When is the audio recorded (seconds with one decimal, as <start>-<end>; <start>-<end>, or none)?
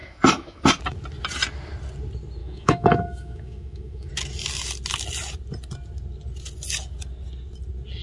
0.6-2.4; 4.1-8.0